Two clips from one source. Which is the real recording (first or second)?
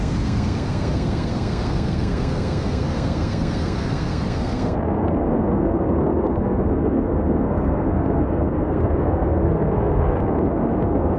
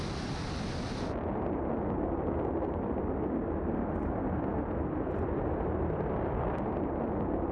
second